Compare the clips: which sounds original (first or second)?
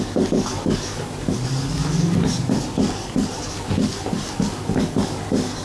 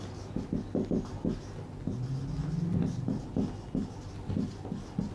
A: second